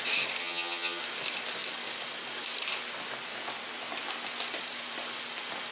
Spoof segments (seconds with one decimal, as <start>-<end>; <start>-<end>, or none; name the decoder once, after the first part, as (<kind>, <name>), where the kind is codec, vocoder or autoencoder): 0.4-1.0 (vocoder, HiFi-GAN)